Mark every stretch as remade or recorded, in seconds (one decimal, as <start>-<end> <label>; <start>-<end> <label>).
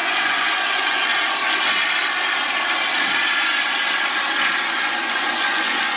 0.0-1.1 remade; 1.1-4.7 recorded; 4.7-6.0 remade